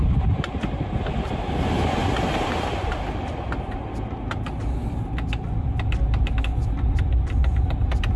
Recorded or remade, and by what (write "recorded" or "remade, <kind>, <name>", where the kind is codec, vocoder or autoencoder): recorded